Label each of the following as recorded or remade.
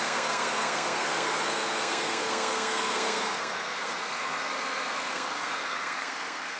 remade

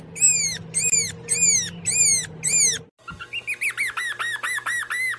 recorded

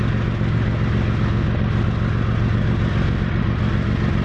recorded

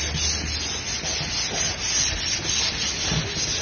recorded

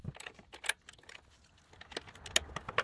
recorded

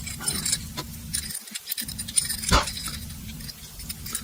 remade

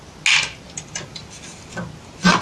recorded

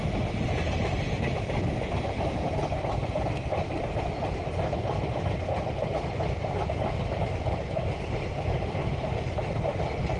remade